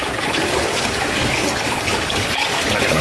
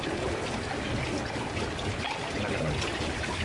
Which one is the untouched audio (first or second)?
second